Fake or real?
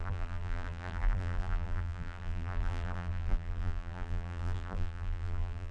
fake